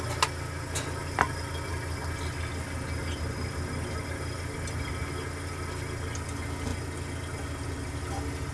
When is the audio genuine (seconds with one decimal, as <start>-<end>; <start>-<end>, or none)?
0.0-8.5